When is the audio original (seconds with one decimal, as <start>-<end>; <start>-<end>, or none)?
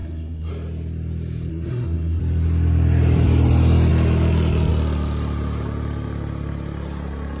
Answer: 0.5-1.5; 2.2-7.4